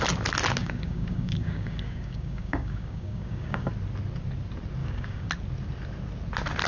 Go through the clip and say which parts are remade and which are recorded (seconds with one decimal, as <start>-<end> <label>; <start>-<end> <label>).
0.0-0.6 recorded; 0.6-3.7 remade; 3.7-4.8 recorded; 4.8-5.3 remade; 5.3-6.7 recorded